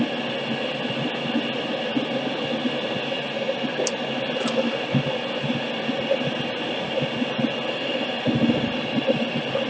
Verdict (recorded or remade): recorded